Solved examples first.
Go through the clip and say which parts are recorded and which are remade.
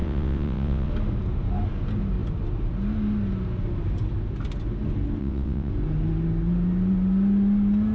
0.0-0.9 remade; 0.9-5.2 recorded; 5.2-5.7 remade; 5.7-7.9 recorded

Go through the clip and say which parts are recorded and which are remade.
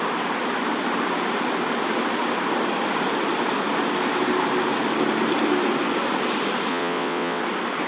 0.0-6.7 recorded; 6.7-7.4 remade; 7.4-7.9 recorded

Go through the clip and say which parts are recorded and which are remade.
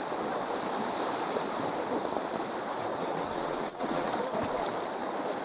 0.0-2.9 recorded; 2.9-4.1 remade; 4.1-5.4 recorded